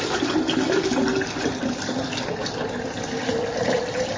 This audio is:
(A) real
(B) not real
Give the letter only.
A